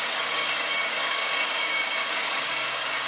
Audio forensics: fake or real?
fake